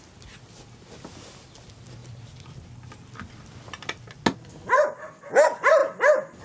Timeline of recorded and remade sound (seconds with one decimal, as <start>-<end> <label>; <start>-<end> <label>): 0.0-6.4 recorded